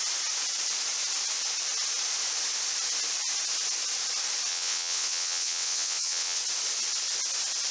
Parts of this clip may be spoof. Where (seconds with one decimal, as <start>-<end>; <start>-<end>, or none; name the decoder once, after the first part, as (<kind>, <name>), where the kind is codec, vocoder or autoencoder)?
4.5-6.4 (vocoder, WaveNeXt)